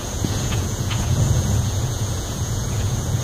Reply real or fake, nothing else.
fake